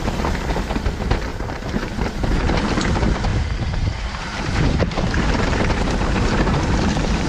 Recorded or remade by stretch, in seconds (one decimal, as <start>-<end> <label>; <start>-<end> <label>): 0.0-1.3 recorded; 1.3-1.9 remade; 1.9-3.3 recorded; 3.3-6.6 remade; 6.6-7.3 recorded